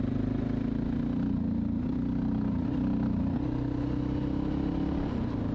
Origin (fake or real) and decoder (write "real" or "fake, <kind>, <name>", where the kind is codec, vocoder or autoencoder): real